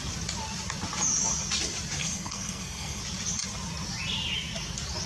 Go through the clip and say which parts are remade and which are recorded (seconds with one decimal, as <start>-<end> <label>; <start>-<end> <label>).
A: 0.0-2.0 recorded; 2.0-3.0 remade; 3.0-5.1 recorded